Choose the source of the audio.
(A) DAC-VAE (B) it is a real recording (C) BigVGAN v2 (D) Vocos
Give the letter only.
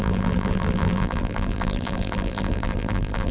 C